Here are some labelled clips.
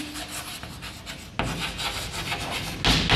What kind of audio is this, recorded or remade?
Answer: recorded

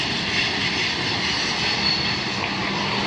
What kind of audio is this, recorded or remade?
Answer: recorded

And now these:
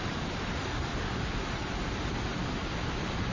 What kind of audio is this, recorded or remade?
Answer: recorded